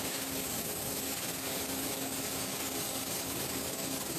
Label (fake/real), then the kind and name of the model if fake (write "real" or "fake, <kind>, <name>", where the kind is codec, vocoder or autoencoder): fake, codec, DAC